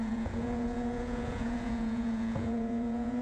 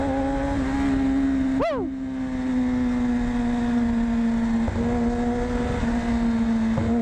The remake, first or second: first